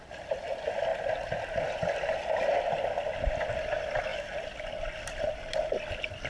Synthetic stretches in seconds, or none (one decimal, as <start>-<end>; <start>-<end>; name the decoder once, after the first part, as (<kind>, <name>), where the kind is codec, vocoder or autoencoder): none